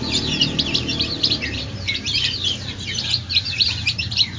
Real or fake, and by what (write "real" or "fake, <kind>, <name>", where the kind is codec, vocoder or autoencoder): fake, vocoder, BigVGAN v2